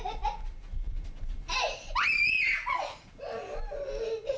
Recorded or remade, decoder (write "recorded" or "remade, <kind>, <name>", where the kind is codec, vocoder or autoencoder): recorded